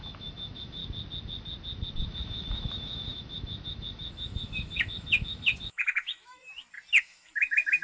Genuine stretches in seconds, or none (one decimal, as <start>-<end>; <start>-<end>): 0.8-1.9; 6.4-7.0